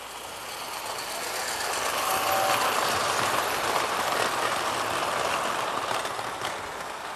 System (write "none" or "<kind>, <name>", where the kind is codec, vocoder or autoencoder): none